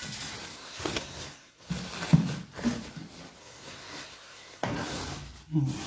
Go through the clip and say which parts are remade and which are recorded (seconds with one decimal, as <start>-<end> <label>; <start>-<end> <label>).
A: 0.0-0.5 recorded; 0.5-1.7 remade; 1.7-3.4 recorded; 3.4-5.0 remade; 5.0-5.9 recorded